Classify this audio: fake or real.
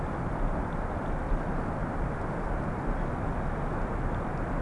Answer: real